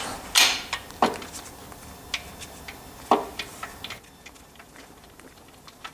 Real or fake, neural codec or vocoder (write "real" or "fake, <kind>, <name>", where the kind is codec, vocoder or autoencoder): real